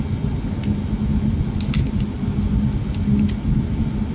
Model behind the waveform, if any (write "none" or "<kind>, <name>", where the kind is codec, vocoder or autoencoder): none